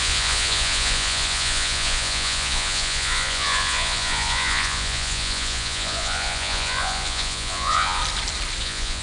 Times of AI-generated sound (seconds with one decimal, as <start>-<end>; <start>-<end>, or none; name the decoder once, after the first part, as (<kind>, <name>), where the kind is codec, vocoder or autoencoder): 0.0-8.0 (vocoder, Vocos); 8.6-9.0